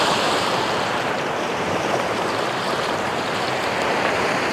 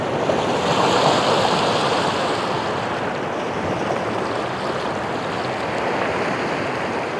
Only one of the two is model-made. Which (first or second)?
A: first